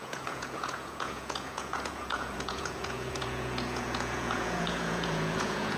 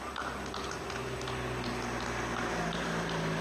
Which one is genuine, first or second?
second